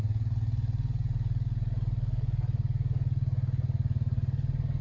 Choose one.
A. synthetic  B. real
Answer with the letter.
B